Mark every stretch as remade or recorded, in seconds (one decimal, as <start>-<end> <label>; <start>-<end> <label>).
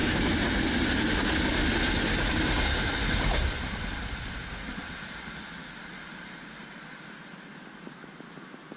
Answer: 0.0-8.8 recorded